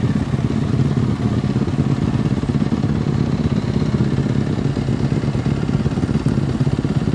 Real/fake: real